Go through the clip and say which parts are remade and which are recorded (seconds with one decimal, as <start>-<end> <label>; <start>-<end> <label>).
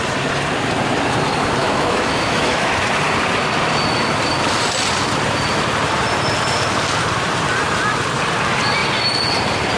0.0-1.6 recorded; 1.6-2.7 remade; 2.7-9.8 recorded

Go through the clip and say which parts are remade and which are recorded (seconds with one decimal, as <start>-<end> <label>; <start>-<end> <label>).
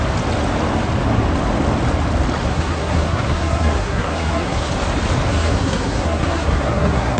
0.0-2.4 recorded; 2.4-4.7 remade; 4.7-5.3 recorded; 5.3-7.2 remade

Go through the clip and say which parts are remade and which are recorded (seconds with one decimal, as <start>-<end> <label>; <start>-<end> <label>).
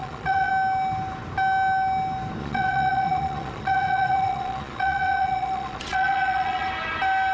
0.0-0.5 remade; 0.5-2.4 recorded; 2.4-6.7 remade; 6.7-7.3 recorded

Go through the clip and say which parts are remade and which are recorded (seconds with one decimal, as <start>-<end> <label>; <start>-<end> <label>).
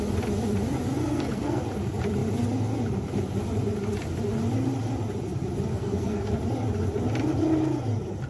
0.0-1.0 recorded; 1.0-1.6 remade; 1.6-5.7 recorded; 5.7-6.3 remade; 6.3-8.3 recorded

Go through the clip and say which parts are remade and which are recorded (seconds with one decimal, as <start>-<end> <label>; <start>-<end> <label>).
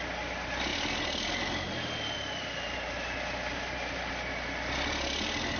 0.0-5.6 recorded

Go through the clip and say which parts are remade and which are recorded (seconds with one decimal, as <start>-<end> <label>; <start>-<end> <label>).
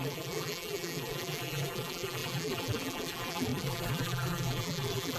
0.0-5.2 remade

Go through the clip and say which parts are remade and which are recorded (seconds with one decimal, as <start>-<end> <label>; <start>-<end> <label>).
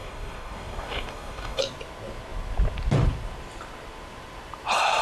0.0-1.6 remade; 1.6-5.0 recorded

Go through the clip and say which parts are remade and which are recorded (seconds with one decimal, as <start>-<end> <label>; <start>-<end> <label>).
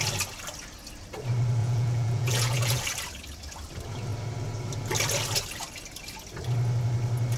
0.0-1.6 recorded; 1.6-2.8 remade; 2.8-7.4 recorded